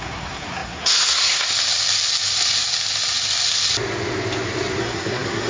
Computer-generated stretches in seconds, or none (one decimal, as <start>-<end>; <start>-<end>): 0.0-1.5; 4.8-5.5